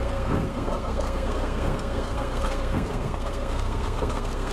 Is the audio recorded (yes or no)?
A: no